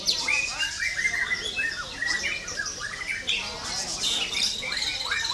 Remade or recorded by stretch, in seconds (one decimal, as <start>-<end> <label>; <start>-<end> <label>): 0.0-5.3 recorded